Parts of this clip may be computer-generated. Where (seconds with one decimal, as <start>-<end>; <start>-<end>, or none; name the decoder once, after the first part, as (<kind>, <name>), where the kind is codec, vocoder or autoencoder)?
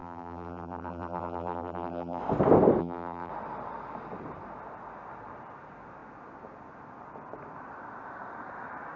0.0-2.2 (vocoder, BigVGAN v2); 2.8-3.3